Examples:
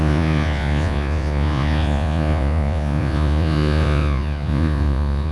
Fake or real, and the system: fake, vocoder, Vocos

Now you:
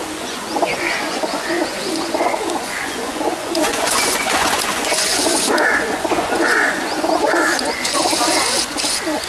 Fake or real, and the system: fake, vocoder, Vocos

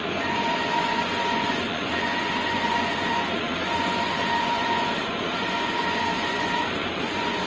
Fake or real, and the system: fake, vocoder, Vocos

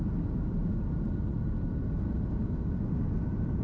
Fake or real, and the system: real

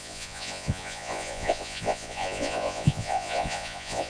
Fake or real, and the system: fake, vocoder, Vocos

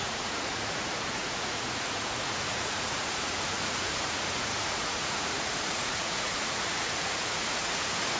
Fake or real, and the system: fake, vocoder, Vocos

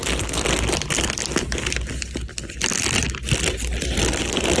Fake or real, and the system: real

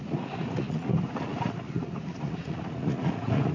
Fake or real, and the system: fake, vocoder, Vocos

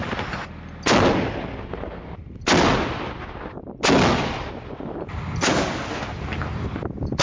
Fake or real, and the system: real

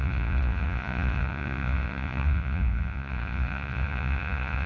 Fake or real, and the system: fake, vocoder, Vocos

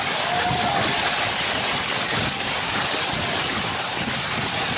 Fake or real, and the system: real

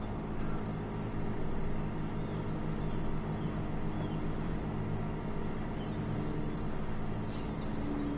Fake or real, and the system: real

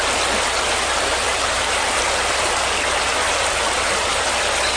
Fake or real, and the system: real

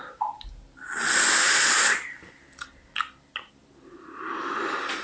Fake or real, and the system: real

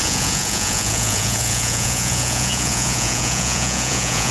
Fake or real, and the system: fake, vocoder, Vocos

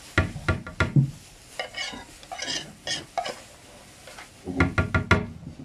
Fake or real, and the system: real